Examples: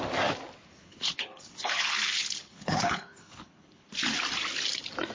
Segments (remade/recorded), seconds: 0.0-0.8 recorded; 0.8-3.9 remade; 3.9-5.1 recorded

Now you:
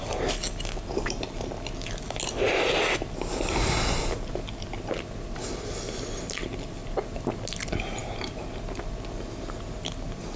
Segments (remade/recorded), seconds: 0.0-10.4 recorded

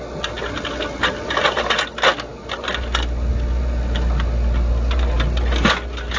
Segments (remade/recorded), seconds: 0.0-6.2 recorded

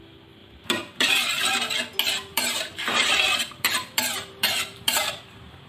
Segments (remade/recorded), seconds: 0.0-0.4 recorded; 0.4-1.4 remade; 1.4-2.3 recorded; 2.3-5.7 remade

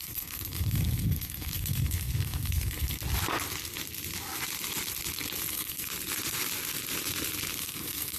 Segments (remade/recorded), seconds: 0.0-3.0 remade; 3.0-5.5 recorded; 5.5-5.9 remade; 5.9-7.6 recorded; 7.6-8.2 remade

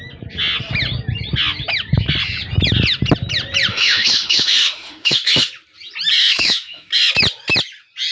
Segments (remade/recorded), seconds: 0.0-3.7 recorded; 3.7-5.5 remade; 5.5-6.2 recorded; 6.2-6.9 remade; 6.9-8.1 recorded

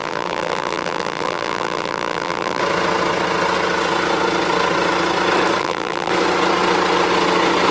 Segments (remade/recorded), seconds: 0.0-2.6 remade; 2.6-5.6 recorded; 5.6-6.1 remade; 6.1-7.7 recorded

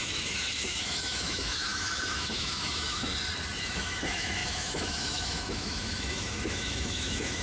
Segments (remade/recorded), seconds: 0.0-3.1 remade; 3.1-3.6 recorded; 3.6-7.4 remade